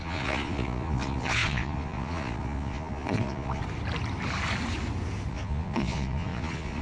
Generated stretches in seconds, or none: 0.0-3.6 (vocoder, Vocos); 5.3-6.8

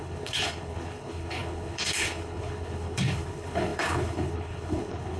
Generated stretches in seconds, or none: 0.0-5.2 (codec, HILCodec)

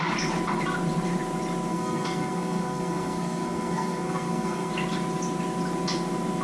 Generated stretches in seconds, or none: 1.7-4.7 (codec, SNAC)

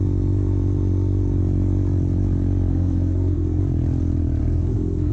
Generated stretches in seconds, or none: 2.7-3.6 (codec, SNAC); 4.4-5.1

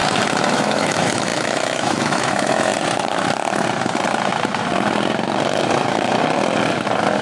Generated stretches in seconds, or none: 0.5-2.7 (autoencoder, DAC-VAE)

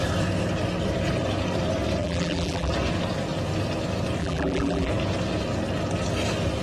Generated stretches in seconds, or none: 2.0-2.7 (vocoder, BigVGAN v2); 4.2-4.9

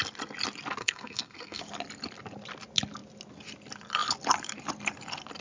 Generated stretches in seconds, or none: 0.8-1.6 (codec, SNAC)

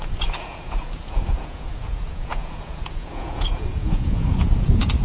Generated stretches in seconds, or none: 0.0-5.0 (vocoder, Vocos)